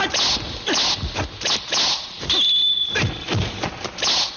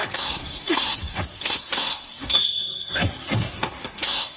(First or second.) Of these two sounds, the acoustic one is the first